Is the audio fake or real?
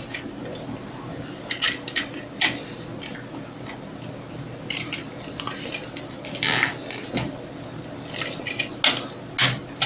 real